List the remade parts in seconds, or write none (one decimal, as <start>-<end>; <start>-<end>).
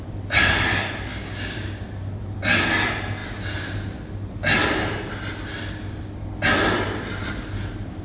1.1-1.8